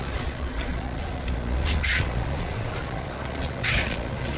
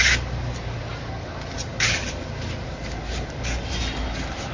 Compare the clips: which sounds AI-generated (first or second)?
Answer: first